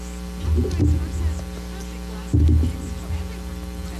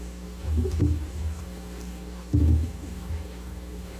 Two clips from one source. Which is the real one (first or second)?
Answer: first